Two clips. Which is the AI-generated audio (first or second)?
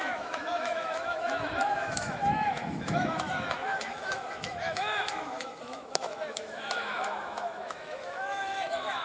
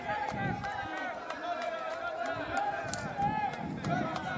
first